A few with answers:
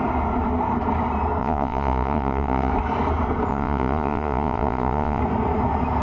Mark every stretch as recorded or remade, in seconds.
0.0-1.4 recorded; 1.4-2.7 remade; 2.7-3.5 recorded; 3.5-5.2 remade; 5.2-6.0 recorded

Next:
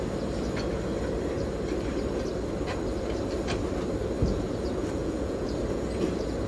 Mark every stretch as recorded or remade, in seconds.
0.0-5.0 recorded; 5.0-5.5 remade; 5.5-6.5 recorded

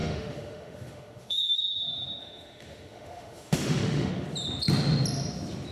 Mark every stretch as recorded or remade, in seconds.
0.0-1.6 remade; 1.6-2.2 recorded; 2.2-4.1 remade; 4.1-5.7 recorded

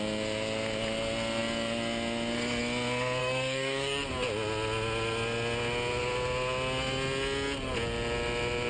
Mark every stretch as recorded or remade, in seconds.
0.0-3.2 recorded; 3.2-4.1 remade; 4.1-8.7 recorded

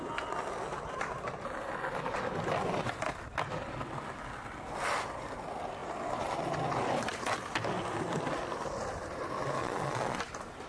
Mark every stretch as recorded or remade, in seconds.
0.0-9.6 recorded; 9.6-10.2 remade; 10.2-10.7 recorded